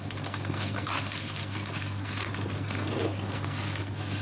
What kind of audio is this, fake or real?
fake